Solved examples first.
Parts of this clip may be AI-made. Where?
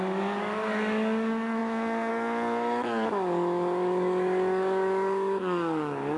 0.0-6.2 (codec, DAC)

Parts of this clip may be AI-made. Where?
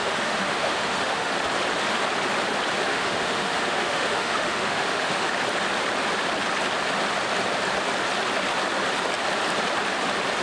0.0-1.3 (autoencoder, DAC-VAE); 2.9-5.3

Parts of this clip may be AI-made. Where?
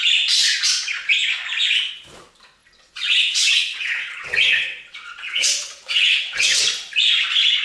2.6-6.6 (vocoder, WaveNeXt)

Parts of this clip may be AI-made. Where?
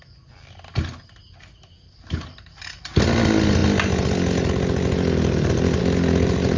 none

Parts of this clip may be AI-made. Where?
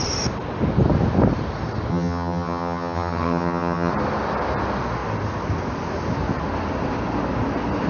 1.9-3.9 (vocoder, HiFi-GAN)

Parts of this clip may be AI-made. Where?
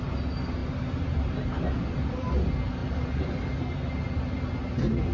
0.6-1.7 (vocoder, BigVGAN v2)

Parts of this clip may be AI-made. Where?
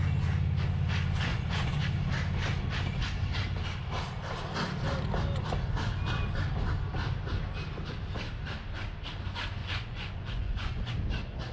1.3-1.8 (vocoder, Vocos); 9.6-10.9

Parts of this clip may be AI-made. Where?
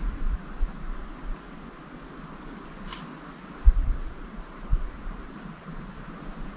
4.7-5.6 (vocoder, BigVGAN v2)